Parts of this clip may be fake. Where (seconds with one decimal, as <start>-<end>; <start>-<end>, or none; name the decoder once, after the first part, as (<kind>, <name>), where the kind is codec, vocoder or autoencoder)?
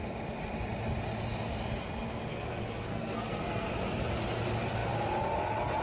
2.3-3.7 (codec, SNAC)